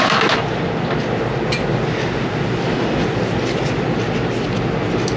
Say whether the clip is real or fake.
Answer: real